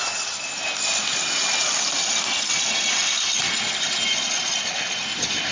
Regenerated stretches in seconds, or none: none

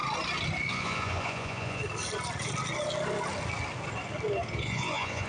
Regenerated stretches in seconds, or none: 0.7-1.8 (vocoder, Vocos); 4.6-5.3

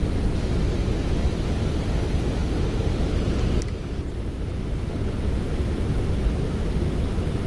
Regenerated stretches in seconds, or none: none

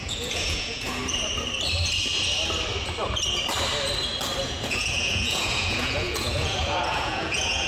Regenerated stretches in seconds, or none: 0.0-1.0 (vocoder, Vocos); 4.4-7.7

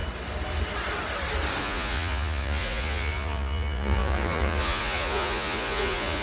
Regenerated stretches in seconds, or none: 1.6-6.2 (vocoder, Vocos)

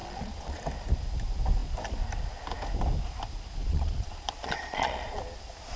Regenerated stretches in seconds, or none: 0.0-0.6 (vocoder, Vocos); 3.6-5.2